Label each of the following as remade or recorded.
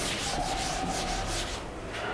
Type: recorded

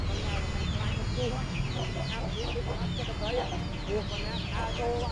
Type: recorded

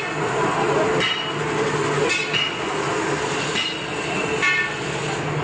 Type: recorded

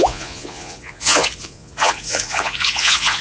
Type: remade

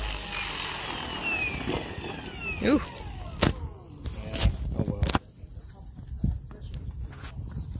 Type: recorded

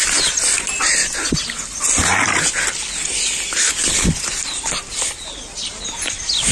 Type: recorded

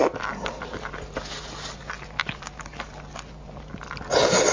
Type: recorded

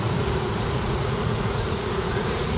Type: remade